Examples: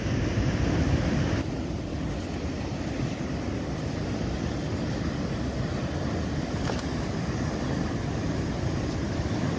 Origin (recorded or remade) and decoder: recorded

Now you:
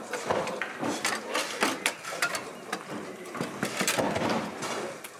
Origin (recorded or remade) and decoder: recorded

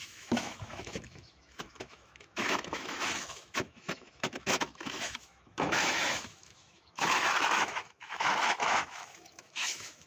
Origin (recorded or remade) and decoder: remade, autoencoder, DAC-VAE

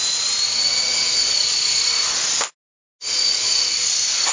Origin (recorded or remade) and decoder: recorded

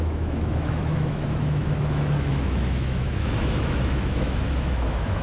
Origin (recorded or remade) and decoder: remade, autoencoder, DAC-VAE